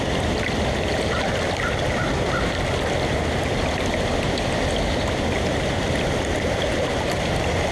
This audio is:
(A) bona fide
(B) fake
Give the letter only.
A